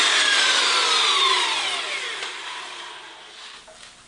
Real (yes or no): yes